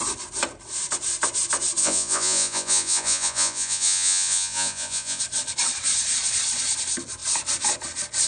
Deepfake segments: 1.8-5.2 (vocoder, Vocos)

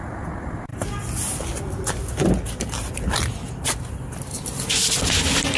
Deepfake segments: none

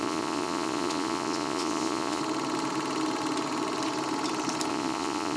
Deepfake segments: 0.0-2.2 (vocoder, Vocos); 4.7-5.4

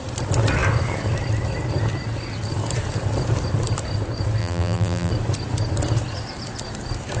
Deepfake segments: 4.4-5.1 (vocoder, BigVGAN v2)